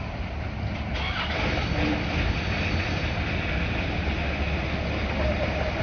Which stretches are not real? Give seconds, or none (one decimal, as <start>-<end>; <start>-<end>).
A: none